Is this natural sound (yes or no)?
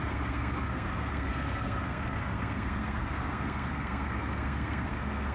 no